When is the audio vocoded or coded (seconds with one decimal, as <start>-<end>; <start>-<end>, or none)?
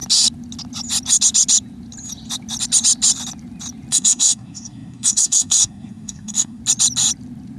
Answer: 3.9-6.6